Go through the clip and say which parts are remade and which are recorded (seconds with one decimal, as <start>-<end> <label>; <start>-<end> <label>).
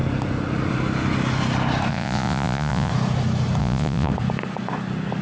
0.0-1.9 recorded; 1.9-2.9 remade; 2.9-3.6 recorded; 3.6-4.1 remade; 4.1-5.2 recorded